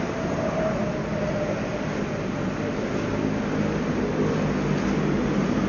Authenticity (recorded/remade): recorded